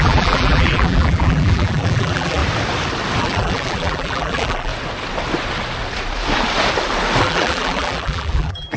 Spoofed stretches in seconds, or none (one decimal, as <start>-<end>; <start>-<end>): 0.0-2.4; 3.2-4.7; 7.2-8.8